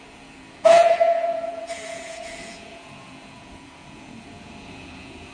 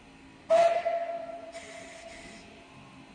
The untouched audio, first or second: second